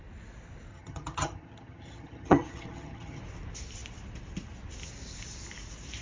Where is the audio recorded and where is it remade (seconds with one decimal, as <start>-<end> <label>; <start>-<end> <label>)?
0.0-0.7 recorded; 0.7-3.2 remade; 3.2-6.0 recorded